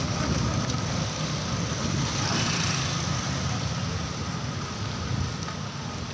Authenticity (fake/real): real